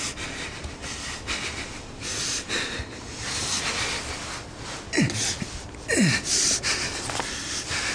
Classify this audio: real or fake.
real